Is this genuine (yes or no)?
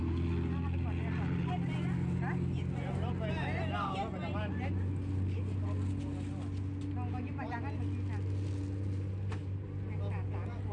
yes